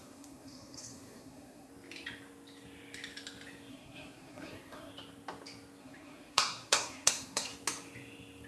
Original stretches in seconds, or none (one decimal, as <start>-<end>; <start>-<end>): 1.7-3.7; 4.9-5.8; 7.5-8.5